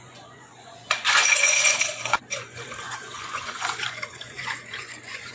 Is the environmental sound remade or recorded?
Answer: remade